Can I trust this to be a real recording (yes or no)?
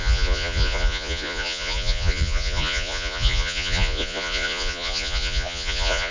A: no